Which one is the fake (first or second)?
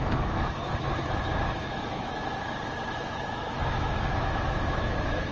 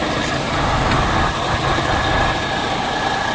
first